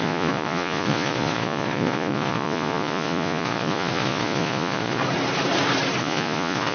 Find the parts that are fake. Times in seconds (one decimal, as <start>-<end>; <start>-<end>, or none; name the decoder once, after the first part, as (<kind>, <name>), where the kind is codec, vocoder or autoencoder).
0.0-5.0 (vocoder, Vocos); 6.0-6.7